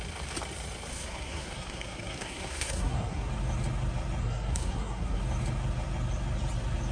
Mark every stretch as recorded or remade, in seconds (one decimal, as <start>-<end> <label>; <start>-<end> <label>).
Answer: 0.0-0.9 recorded; 0.9-3.3 remade; 3.3-4.2 recorded; 4.2-5.2 remade; 5.2-6.9 recorded